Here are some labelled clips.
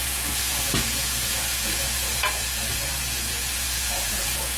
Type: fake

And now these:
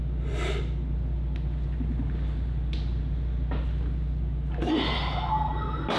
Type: real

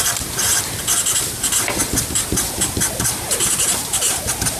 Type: real